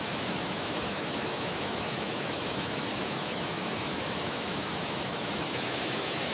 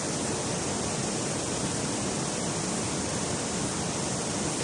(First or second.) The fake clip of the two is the first